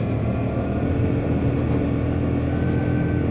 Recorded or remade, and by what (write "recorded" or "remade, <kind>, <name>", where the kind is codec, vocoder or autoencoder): recorded